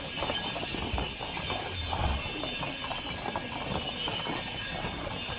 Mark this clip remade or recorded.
recorded